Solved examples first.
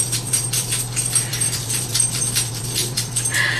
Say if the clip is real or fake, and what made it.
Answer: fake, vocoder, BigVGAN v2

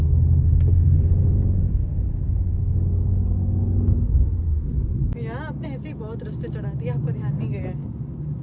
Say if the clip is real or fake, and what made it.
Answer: real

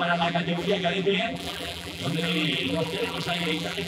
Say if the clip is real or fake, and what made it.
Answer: fake, vocoder, BigVGAN v2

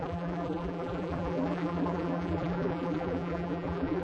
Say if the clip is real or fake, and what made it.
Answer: fake, vocoder, BigVGAN v2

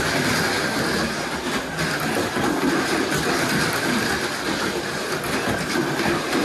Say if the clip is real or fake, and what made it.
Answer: real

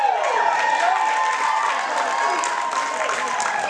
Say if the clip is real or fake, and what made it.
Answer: real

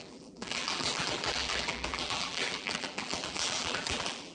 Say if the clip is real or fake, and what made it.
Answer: fake, vocoder, BigVGAN v2